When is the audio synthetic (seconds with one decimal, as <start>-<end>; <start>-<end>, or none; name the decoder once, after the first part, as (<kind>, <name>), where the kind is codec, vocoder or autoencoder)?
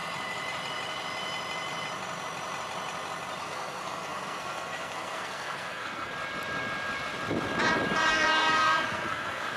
3.4-6.1 (codec, SNAC); 8.1-9.6